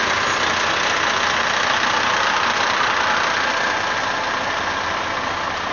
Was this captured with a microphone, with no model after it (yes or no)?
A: yes